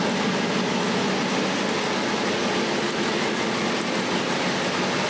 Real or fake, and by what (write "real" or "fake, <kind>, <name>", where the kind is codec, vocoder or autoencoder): real